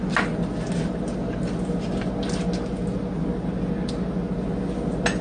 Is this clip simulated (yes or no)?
no